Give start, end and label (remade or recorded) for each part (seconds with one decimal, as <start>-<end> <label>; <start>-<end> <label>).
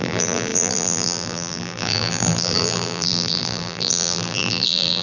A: 0.0-5.0 remade